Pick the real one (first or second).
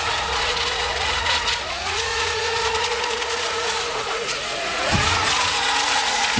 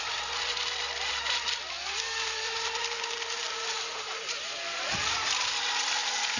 second